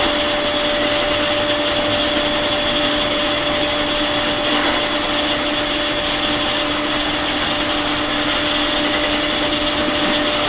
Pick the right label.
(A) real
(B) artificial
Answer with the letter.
A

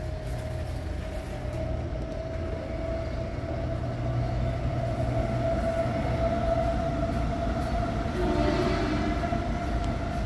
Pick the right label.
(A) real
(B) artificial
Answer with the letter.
A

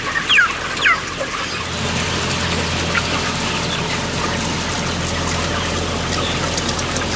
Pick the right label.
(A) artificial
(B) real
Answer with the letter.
B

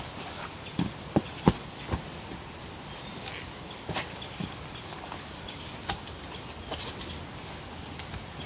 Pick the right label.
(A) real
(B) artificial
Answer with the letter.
A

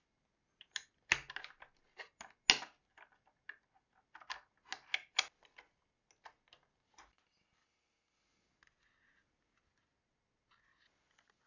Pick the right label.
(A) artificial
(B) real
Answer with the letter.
B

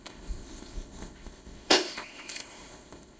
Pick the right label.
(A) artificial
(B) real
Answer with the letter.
A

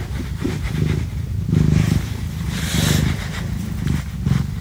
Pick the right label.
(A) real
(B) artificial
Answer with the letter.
A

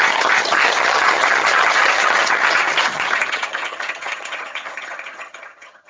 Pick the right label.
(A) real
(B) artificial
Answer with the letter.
B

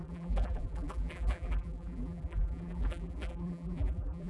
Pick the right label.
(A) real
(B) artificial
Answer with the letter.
B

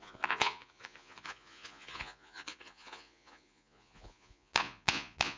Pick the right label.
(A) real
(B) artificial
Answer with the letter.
B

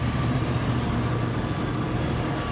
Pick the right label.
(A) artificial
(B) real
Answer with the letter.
B